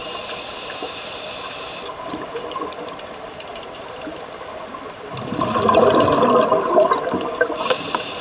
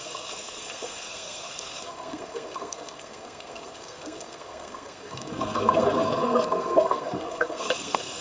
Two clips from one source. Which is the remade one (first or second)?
second